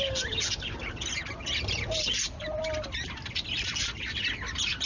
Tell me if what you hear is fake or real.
real